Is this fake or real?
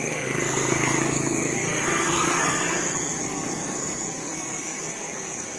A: fake